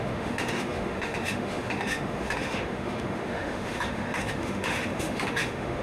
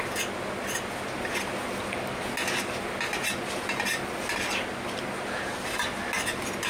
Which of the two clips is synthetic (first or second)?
first